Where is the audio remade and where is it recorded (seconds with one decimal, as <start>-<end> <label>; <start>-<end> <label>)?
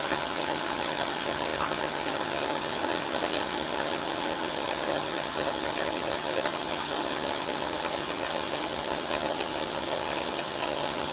0.0-11.1 remade